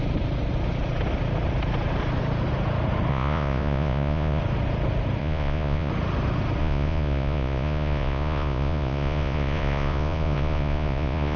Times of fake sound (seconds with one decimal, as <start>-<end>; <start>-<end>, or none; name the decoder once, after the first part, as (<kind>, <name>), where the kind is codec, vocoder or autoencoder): 3.1-4.4 (vocoder, Vocos); 5.2-5.9; 6.6-11.4